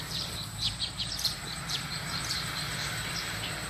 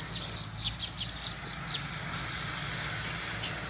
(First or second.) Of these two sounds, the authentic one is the second